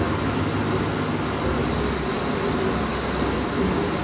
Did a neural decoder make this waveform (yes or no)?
no